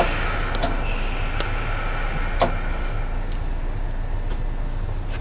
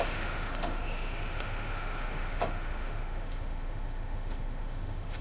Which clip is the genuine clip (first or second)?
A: first